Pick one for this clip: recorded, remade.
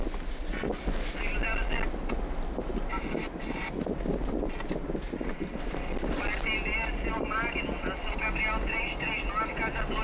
recorded